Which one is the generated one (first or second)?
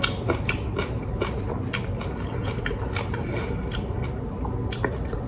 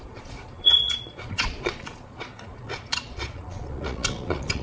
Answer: second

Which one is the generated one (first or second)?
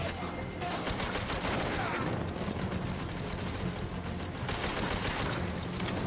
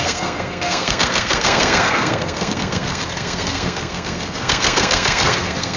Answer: second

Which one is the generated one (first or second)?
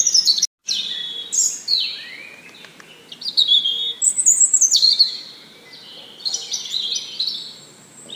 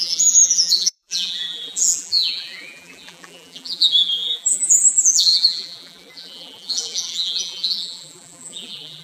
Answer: second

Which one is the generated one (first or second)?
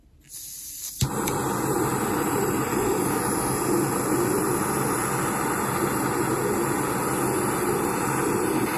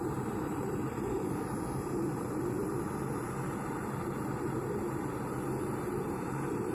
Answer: second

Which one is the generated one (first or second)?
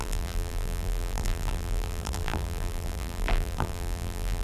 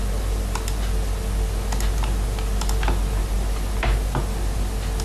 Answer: first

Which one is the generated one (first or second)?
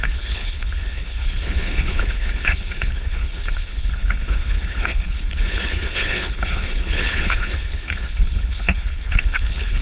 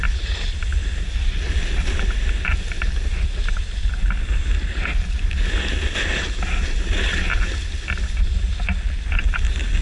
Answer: first